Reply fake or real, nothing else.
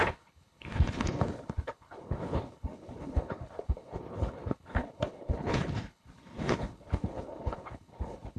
fake